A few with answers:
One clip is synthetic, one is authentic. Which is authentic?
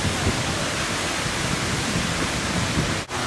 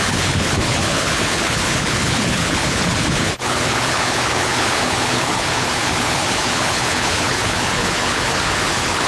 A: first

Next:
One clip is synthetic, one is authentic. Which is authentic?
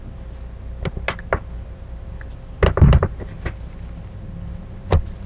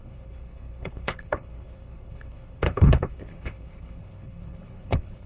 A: first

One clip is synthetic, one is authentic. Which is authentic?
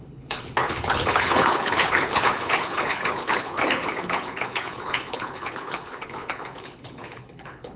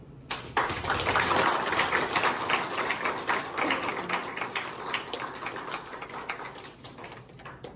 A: second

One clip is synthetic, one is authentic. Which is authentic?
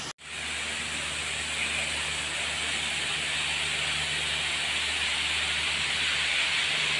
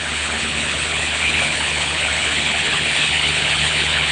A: first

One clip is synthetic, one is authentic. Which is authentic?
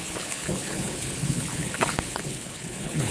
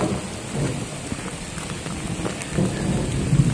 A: second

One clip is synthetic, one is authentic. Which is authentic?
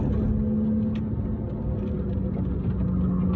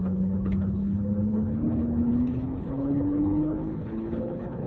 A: first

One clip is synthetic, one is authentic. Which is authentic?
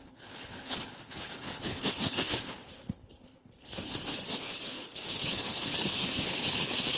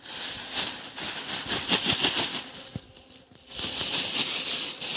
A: second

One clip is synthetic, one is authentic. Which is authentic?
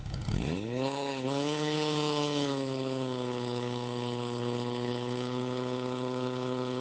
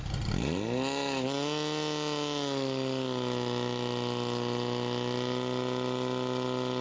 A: second